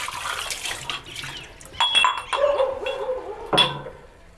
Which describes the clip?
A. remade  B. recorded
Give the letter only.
B